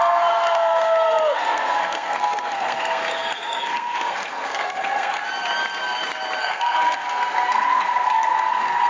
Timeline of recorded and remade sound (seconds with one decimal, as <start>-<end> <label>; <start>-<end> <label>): 0.0-5.2 remade; 5.2-6.4 recorded; 6.4-8.9 remade